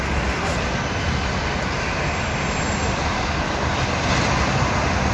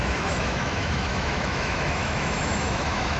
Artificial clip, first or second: second